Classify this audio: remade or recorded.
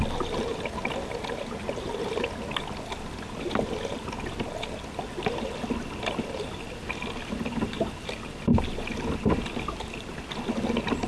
recorded